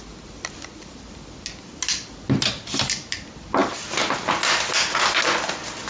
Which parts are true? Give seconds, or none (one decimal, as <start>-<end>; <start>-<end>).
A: 0.0-5.9